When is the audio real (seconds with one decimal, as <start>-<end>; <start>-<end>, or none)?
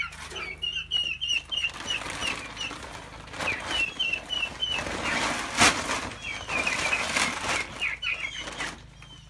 0.0-9.3